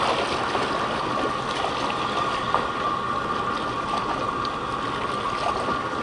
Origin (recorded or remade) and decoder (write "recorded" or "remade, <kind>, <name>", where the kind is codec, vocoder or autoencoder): recorded